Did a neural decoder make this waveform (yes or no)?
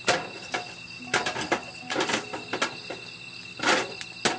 no